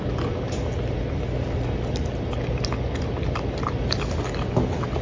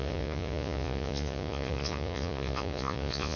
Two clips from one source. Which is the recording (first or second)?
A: first